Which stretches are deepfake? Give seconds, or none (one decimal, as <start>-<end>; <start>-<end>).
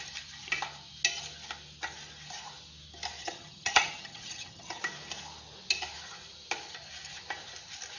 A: 3.2-4.8